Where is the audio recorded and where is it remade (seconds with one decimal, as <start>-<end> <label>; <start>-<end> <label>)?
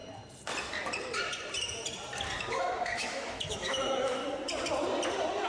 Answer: 0.0-2.4 recorded; 2.4-4.2 remade; 4.2-5.5 recorded